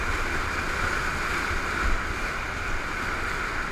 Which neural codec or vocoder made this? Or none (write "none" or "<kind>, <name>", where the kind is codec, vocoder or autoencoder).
none